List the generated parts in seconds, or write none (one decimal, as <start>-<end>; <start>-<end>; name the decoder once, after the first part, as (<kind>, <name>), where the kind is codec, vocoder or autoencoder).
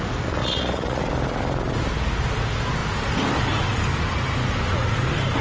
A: 0.4-1.0 (vocoder, Vocos)